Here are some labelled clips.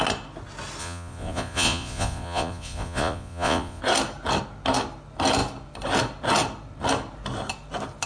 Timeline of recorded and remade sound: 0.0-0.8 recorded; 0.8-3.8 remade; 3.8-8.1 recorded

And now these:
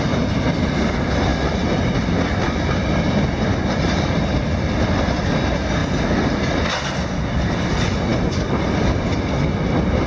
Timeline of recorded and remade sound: 0.0-10.1 recorded

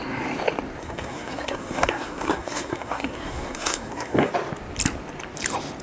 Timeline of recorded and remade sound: 0.0-0.8 recorded; 0.8-4.3 remade; 4.3-5.8 recorded